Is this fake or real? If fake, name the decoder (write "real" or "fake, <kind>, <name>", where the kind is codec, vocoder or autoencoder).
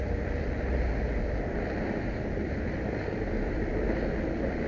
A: real